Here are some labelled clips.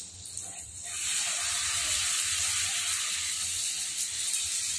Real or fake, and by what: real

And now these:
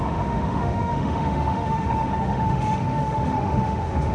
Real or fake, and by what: fake, autoencoder, DAC-VAE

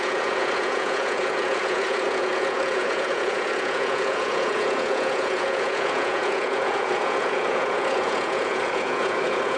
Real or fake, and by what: fake, vocoder, Vocos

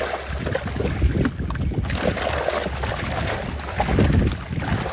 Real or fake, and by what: real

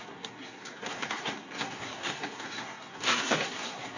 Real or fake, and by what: fake, codec, SNAC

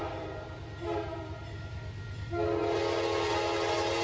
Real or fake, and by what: real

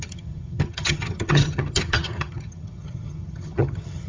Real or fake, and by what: fake, vocoder, HiFi-GAN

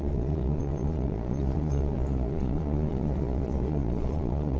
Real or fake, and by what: fake, vocoder, Vocos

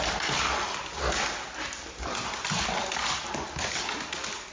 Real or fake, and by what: real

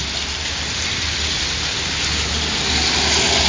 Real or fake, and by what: real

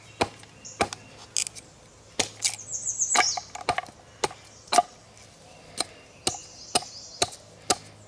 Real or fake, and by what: real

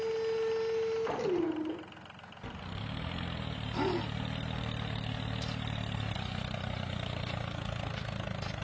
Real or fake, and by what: real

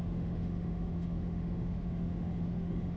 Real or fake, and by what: fake, autoencoder, DAC-VAE